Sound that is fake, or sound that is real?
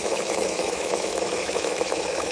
fake